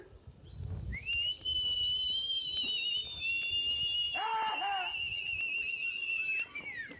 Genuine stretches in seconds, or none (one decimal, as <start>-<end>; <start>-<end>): 0.0-7.0